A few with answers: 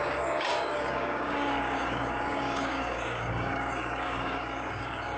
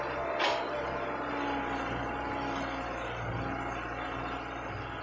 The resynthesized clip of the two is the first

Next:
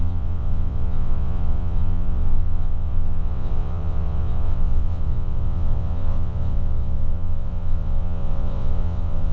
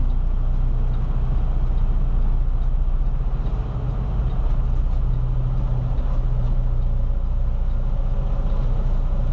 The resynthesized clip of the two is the first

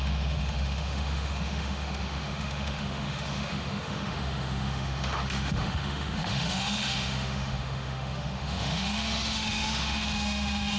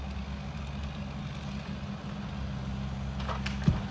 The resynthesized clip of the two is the first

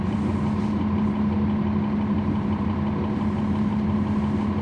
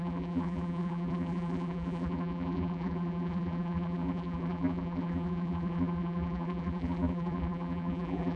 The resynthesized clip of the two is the second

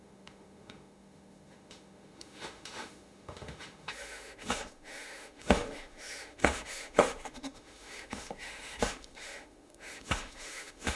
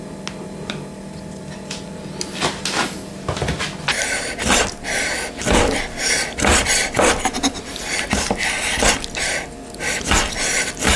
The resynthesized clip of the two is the first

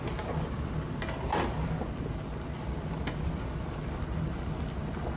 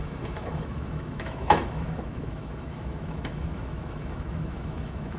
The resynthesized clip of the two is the second